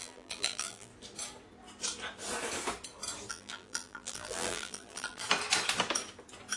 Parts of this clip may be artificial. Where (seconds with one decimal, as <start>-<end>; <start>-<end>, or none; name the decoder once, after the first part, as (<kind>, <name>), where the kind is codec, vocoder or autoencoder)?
0.0-0.9 (vocoder, BigVGAN v2); 3.3-5.2